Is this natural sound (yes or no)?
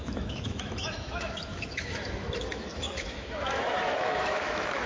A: no